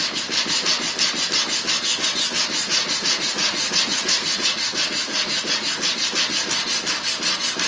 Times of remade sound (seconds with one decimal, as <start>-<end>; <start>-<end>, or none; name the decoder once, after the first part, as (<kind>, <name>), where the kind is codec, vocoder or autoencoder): 2.6-5.9 (vocoder, Vocos)